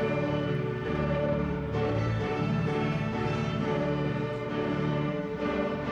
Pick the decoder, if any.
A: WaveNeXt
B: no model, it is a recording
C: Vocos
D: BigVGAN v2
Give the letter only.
D